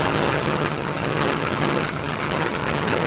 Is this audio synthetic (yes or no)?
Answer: yes